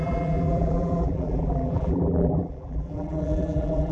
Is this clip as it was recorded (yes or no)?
no